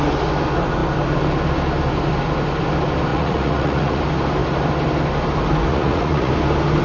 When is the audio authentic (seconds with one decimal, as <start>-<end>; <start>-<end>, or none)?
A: 0.0-3.1; 4.0-5.7; 6.3-6.8